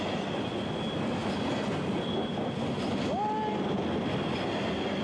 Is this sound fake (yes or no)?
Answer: no